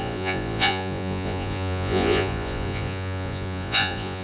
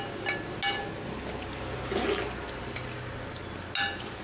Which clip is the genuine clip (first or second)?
second